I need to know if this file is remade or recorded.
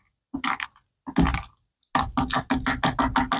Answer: recorded